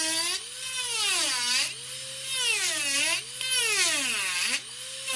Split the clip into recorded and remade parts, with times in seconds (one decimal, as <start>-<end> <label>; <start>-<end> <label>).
0.0-5.2 recorded